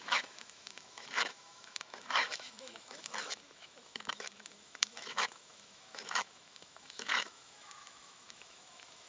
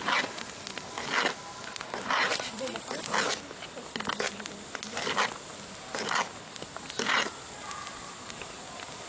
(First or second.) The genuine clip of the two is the second